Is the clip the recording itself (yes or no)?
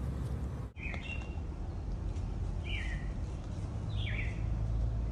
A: yes